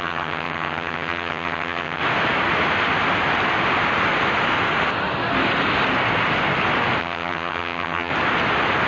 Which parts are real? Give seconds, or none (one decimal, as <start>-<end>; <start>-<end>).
2.0-7.0; 8.1-8.9